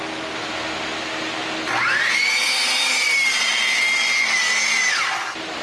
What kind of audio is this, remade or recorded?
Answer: recorded